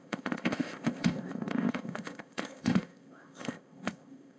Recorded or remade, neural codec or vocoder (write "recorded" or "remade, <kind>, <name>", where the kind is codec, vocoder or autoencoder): remade, codec, ZipCodec